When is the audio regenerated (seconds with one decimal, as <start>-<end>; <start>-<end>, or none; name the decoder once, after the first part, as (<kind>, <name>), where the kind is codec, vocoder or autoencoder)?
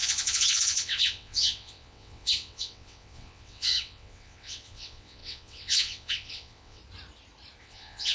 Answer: 0.0-6.8 (vocoder, WaveNeXt); 7.6-8.1